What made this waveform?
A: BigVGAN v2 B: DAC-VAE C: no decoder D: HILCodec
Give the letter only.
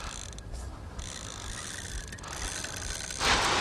C